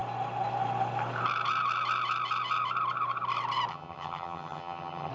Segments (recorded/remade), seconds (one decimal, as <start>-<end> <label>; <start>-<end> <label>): 0.0-3.7 recorded; 3.7-5.1 remade